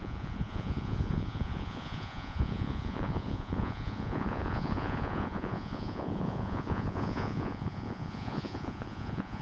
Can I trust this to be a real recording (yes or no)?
no